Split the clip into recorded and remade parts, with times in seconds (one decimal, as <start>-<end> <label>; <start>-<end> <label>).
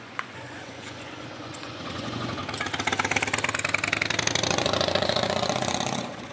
0.0-2.4 remade; 2.4-4.5 recorded; 4.5-6.3 remade